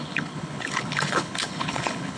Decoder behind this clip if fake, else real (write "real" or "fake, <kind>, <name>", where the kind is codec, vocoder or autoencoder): fake, codec, HILCodec